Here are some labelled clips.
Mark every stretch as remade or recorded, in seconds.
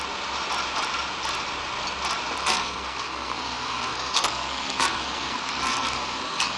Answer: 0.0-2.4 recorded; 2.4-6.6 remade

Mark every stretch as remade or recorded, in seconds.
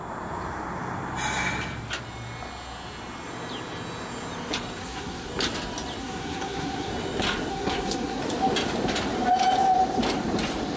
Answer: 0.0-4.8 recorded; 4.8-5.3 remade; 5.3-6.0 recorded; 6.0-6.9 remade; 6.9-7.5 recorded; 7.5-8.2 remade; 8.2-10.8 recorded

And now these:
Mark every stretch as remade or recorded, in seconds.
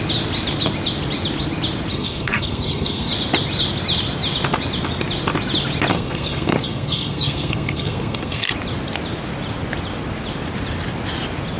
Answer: 0.0-1.9 recorded; 1.9-3.1 remade; 3.1-5.9 recorded; 5.9-8.5 remade; 8.5-11.6 recorded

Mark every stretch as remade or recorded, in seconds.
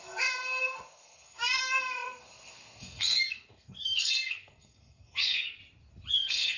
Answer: 0.0-5.6 remade; 5.6-6.1 recorded; 6.1-6.6 remade